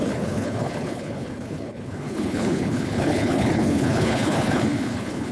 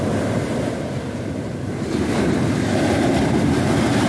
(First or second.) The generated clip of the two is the first